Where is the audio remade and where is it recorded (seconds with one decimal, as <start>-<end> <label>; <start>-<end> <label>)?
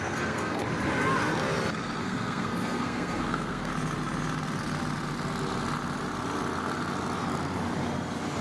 0.0-0.6 remade; 0.6-2.0 recorded; 2.0-3.7 remade; 3.7-8.4 recorded